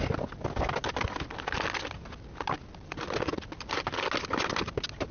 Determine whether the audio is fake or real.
real